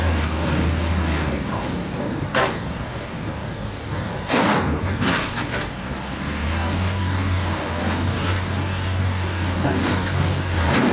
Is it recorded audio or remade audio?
remade